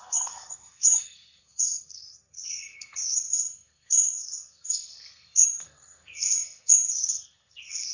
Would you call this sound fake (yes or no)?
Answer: yes